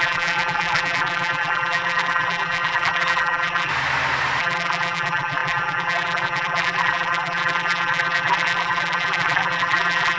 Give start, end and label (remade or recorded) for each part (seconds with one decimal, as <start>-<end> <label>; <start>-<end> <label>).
0.0-3.7 remade; 3.7-4.4 recorded; 4.4-10.2 remade